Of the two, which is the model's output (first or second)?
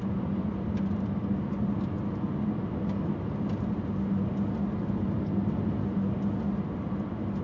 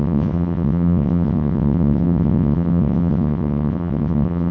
second